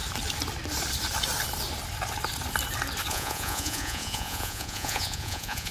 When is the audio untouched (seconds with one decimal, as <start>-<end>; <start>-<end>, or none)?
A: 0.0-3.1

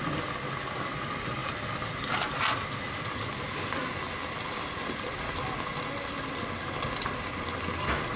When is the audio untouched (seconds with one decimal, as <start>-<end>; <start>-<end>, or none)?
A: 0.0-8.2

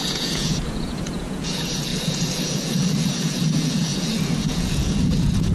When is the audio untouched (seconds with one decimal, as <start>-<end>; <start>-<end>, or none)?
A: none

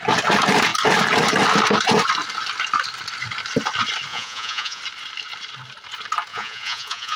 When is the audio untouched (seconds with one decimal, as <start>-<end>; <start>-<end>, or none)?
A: 0.0-4.1; 4.8-6.3

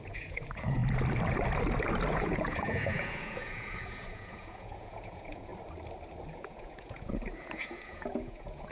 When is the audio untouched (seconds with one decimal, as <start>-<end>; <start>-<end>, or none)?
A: 0.8-2.1; 5.5-6.3

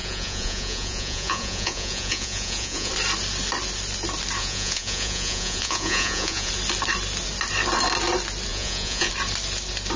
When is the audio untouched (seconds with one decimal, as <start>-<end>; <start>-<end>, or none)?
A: 2.9-4.4; 6.5-8.5; 9.1-10.0

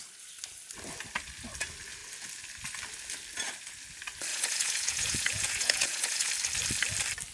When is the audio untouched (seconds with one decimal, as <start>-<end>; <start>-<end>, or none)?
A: 0.0-4.3; 6.3-7.3

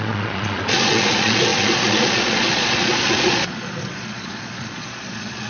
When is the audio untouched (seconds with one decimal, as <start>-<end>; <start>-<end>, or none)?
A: none